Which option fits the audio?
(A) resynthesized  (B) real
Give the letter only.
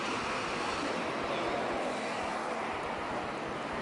B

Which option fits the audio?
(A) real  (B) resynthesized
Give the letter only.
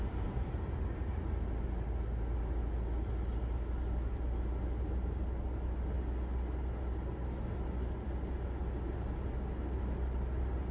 A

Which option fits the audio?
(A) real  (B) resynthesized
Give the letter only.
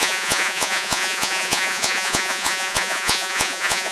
B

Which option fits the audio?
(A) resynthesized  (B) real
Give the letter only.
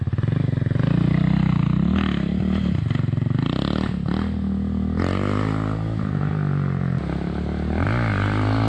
B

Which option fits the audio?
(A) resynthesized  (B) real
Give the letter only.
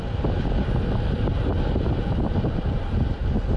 B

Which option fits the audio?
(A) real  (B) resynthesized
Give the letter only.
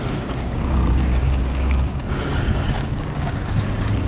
B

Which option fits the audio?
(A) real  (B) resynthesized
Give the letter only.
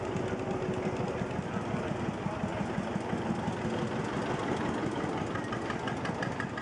A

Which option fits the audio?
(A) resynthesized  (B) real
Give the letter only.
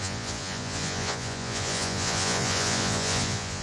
A